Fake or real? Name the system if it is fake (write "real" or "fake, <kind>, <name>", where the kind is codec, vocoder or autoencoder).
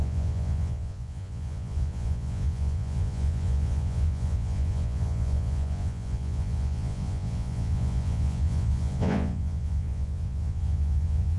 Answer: fake, vocoder, Vocos